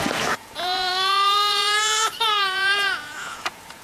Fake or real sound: fake